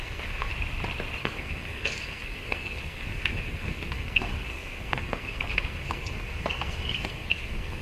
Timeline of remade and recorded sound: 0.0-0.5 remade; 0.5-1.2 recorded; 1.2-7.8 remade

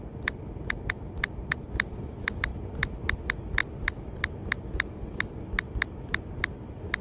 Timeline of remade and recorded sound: 0.0-7.0 recorded

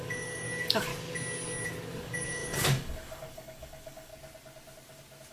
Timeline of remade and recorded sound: 0.0-0.9 remade; 0.9-2.0 recorded; 2.0-4.1 remade; 4.1-5.3 recorded

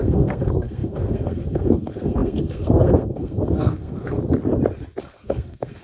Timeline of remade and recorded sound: 0.0-4.2 remade; 4.2-5.0 recorded; 5.0-5.8 remade